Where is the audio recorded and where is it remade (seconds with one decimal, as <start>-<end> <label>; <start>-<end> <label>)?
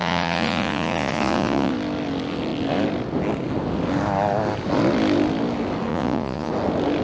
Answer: 0.0-1.7 remade; 1.7-5.9 recorded; 5.9-6.5 remade; 6.5-7.0 recorded